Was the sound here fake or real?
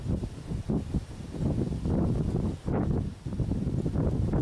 real